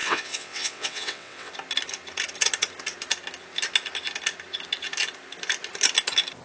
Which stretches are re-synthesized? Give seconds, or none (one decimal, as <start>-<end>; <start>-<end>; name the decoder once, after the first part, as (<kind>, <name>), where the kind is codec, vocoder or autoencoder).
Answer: 0.0-1.5 (vocoder, WaveNeXt)